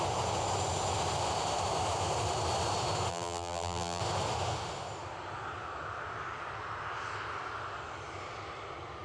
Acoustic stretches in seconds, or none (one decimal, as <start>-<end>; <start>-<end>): 0.0-3.1; 4.0-9.0